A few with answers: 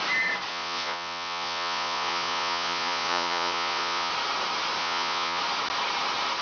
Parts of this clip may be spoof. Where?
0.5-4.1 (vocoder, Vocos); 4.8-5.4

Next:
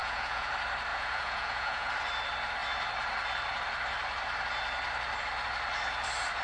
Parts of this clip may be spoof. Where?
0.0-0.5 (vocoder, Vocos); 0.9-1.9

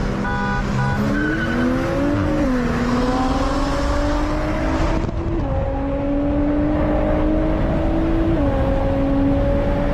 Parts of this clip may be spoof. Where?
none

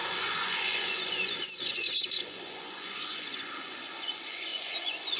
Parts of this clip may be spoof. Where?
0.0-5.2 (vocoder, Vocos)

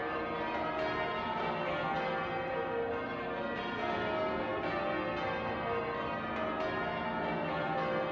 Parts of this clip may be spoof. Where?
none

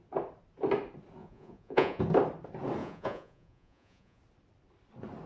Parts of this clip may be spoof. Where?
1.2-2.0 (vocoder, Vocos); 2.8-4.2

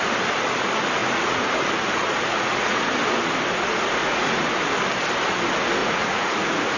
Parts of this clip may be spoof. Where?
1.0-1.5 (vocoder, Vocos); 2.0-2.9; 4.0-4.5; 5.8-6.8

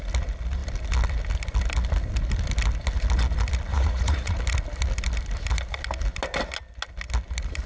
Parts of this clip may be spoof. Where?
3.7-4.4 (vocoder, Vocos)